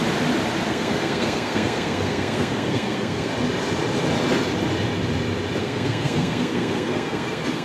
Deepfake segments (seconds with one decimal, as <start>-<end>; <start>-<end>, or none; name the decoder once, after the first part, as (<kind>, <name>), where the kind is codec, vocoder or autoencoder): 0.7-3.3 (codec, SNAC); 5.6-7.6